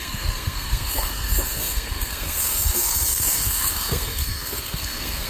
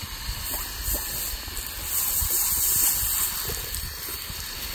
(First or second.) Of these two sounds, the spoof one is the first